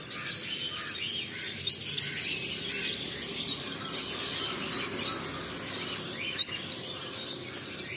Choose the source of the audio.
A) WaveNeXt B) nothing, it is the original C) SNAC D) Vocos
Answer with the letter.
B